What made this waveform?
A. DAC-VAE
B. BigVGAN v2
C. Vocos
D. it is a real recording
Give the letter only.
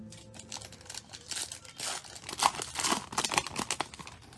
D